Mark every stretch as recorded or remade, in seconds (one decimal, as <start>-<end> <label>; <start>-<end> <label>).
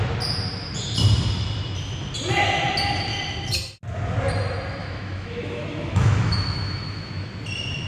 0.0-4.8 recorded; 4.8-7.3 remade; 7.3-7.9 recorded